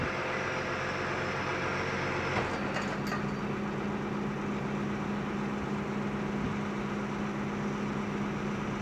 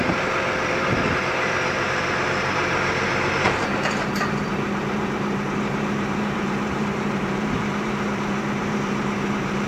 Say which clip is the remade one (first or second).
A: second